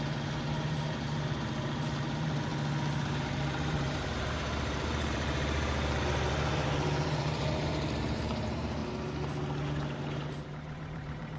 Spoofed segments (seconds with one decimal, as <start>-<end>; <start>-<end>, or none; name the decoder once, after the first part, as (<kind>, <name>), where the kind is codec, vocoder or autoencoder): 0.0-2.5 (vocoder, BigVGAN v2); 3.0-8.8; 10.1-11.4

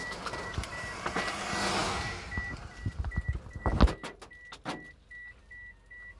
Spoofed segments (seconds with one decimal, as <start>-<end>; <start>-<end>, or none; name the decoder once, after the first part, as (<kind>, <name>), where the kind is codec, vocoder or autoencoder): 0.0-1.2 (vocoder, BigVGAN v2)